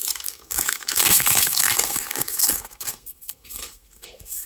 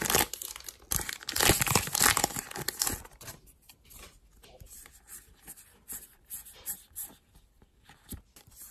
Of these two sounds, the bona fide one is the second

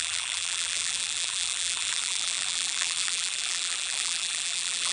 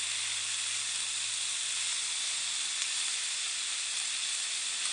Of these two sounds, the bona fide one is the second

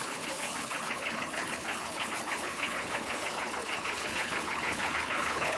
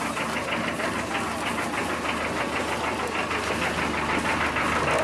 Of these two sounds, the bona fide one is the second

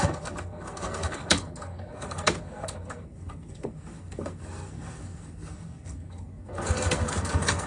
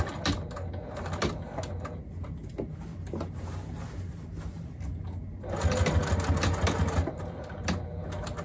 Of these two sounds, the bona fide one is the second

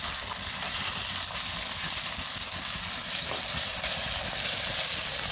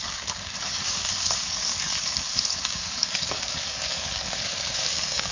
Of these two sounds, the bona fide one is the first